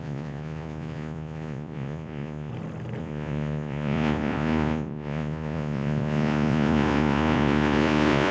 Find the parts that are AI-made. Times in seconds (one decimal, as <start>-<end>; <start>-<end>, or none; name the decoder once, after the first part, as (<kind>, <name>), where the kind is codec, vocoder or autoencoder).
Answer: 0.0-2.5 (vocoder, Vocos); 3.0-8.3